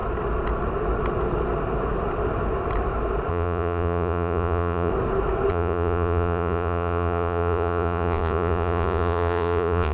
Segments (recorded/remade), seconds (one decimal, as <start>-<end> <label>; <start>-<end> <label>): 0.0-3.3 recorded; 3.3-4.9 remade; 4.9-5.5 recorded; 5.5-9.9 remade

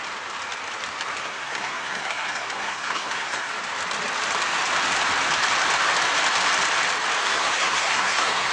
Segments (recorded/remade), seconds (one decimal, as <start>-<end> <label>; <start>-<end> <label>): 0.0-1.2 recorded; 1.2-3.5 remade; 3.5-7.2 recorded; 7.2-8.5 remade

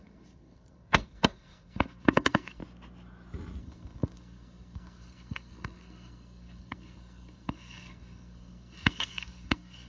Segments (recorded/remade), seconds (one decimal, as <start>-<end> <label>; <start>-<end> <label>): 0.0-2.6 remade; 2.6-3.6 recorded; 3.6-9.9 remade

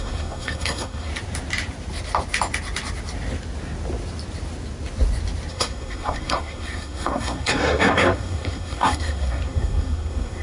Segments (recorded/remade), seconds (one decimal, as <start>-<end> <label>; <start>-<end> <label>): 0.0-1.1 remade; 1.1-5.5 recorded; 5.5-10.4 remade

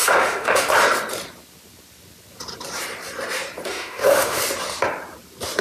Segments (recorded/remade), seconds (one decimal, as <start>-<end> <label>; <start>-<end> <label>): 0.0-0.7 remade; 0.7-3.7 recorded; 3.7-4.4 remade; 4.4-5.6 recorded

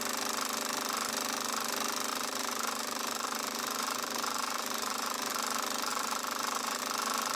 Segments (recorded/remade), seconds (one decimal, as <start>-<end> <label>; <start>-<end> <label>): 0.0-2.1 recorded; 2.1-5.3 remade; 5.3-5.9 recorded; 5.9-6.8 remade; 6.8-7.3 recorded

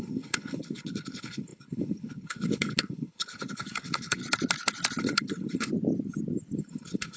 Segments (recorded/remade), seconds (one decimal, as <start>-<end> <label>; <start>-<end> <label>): 0.0-4.2 remade; 4.2-5.0 recorded; 5.0-5.7 remade; 5.7-6.6 recorded; 6.6-7.2 remade